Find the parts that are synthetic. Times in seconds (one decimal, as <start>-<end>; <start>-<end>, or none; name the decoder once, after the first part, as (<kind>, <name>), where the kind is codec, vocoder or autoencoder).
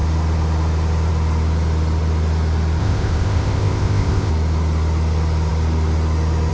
2.8-4.3 (codec, ZipCodec)